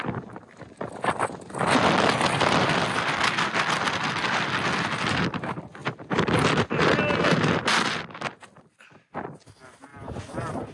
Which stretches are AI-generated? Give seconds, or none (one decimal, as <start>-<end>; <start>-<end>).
none